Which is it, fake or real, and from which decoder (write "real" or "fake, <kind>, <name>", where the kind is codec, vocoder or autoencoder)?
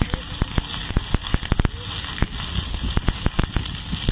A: real